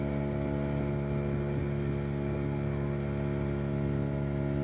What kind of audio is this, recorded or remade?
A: recorded